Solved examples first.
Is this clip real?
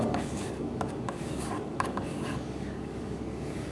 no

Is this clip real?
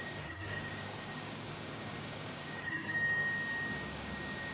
no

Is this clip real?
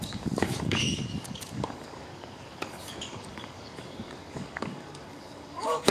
no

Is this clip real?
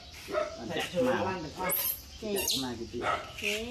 yes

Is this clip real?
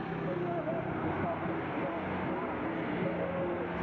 yes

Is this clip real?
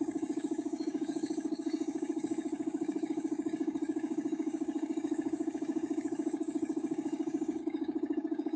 no